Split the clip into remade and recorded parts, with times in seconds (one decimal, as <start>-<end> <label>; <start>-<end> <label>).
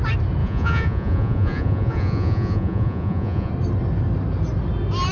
0.0-0.4 recorded; 0.4-3.5 remade; 3.5-5.1 recorded